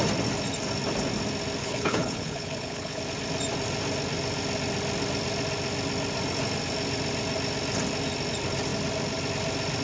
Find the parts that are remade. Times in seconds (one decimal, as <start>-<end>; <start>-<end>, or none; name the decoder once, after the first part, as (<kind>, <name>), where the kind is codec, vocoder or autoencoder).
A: 1.6-3.0 (codec, HILCodec)